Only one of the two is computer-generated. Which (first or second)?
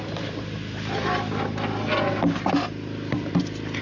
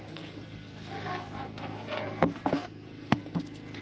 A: second